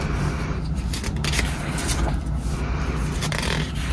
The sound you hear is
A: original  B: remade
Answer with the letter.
A